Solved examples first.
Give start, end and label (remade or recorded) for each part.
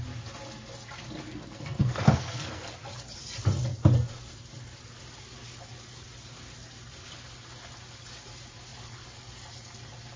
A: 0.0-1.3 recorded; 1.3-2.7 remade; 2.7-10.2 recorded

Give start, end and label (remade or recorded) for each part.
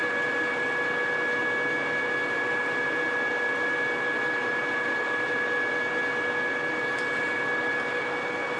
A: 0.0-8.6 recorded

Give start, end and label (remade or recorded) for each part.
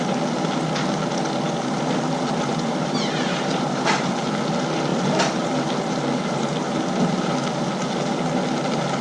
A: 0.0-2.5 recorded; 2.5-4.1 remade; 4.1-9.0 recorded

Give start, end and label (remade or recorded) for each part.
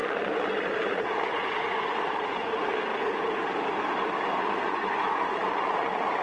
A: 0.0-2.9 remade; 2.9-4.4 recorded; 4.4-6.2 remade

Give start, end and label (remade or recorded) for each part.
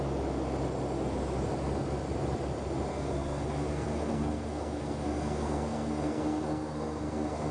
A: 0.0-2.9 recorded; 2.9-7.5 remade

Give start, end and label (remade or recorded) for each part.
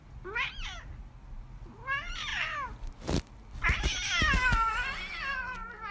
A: 0.0-5.9 recorded